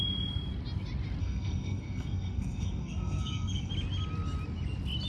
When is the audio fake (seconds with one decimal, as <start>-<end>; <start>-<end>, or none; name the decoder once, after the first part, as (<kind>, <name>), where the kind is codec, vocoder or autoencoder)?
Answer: 1.2-3.7 (codec, SNAC)